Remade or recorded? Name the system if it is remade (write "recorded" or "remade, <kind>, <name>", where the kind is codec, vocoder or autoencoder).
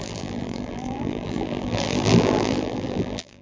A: remade, vocoder, BigVGAN v2